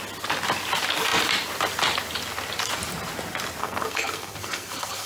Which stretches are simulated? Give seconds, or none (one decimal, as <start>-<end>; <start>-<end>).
3.6-5.1